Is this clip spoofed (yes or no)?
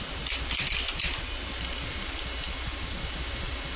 no